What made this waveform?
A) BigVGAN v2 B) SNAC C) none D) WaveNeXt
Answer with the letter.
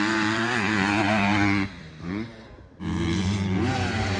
A